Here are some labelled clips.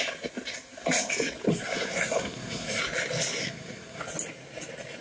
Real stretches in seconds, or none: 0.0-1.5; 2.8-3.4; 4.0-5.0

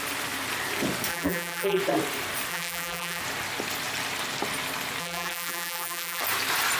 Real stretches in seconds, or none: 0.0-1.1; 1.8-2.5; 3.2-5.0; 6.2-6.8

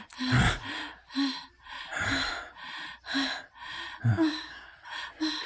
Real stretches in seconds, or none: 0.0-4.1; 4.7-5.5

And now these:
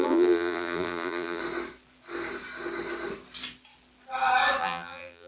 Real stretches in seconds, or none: 1.4-4.6

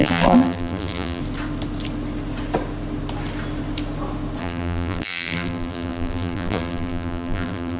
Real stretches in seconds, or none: 1.2-4.4

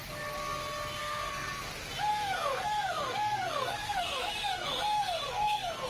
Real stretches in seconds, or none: 0.0-1.0; 1.6-2.1